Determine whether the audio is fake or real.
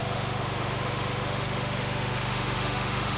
fake